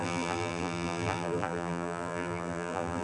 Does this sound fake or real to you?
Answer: fake